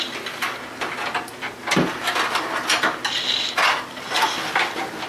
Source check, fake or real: real